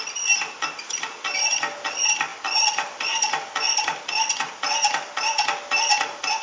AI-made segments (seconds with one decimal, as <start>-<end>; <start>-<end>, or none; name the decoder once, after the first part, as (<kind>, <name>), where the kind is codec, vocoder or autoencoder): none